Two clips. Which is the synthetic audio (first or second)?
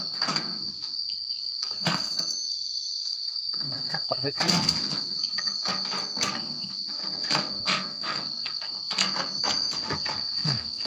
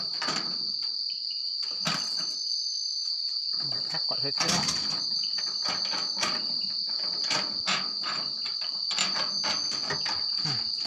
first